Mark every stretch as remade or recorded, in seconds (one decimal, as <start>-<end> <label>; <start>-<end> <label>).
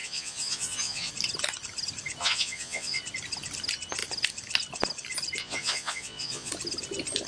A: 0.0-1.1 remade; 1.1-2.2 recorded; 2.2-3.0 remade; 3.0-5.4 recorded; 5.4-6.5 remade; 6.5-7.3 recorded